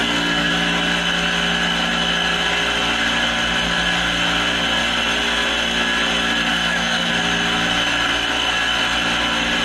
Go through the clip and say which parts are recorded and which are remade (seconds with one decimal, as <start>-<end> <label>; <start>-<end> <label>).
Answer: 0.0-0.5 remade; 0.5-6.5 recorded; 6.5-7.1 remade; 7.1-9.6 recorded